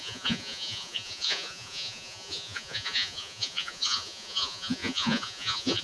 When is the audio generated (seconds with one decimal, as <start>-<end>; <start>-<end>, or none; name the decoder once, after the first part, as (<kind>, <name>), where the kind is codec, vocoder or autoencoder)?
0.0-5.8 (vocoder, Vocos)